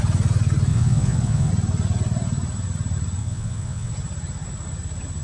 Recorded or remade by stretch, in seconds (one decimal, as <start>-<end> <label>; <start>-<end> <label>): 0.0-0.7 recorded; 0.7-1.5 remade; 1.5-3.2 recorded; 3.2-3.9 remade; 3.9-5.2 recorded